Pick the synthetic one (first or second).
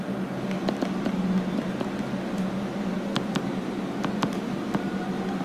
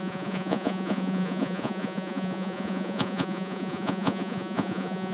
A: second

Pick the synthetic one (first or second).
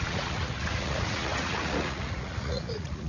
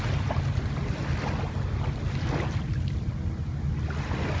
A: first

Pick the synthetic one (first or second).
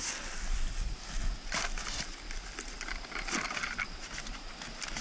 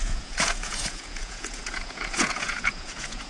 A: second